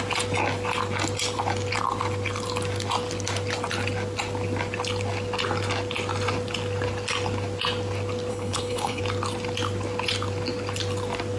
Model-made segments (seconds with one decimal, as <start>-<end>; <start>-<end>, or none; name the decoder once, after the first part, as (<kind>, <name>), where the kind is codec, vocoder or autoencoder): 8.3-9.0 (codec, HILCodec)